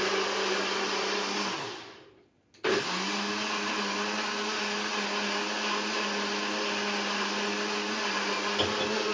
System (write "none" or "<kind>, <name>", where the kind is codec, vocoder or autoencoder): none